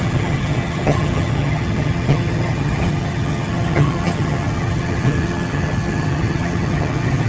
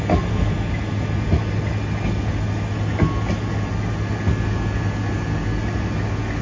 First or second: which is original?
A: second